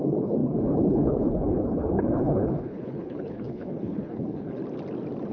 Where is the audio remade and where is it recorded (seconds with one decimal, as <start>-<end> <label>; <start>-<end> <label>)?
0.0-4.6 remade; 4.6-5.3 recorded